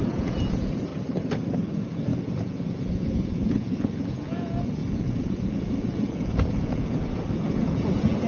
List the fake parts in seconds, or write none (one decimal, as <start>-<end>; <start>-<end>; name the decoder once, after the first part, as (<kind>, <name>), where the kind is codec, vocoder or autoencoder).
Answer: 0.0-0.9 (vocoder, Vocos); 1.7-8.3